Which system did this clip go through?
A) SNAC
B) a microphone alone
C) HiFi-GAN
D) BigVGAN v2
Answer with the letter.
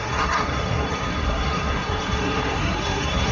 A